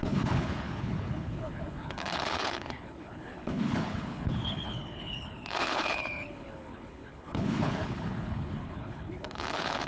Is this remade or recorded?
remade